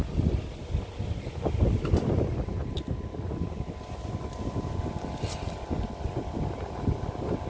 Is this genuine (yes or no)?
yes